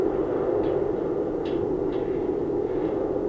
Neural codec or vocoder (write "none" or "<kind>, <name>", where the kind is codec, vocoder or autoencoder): none